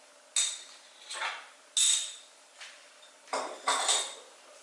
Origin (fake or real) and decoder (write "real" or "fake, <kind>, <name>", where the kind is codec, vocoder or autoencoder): real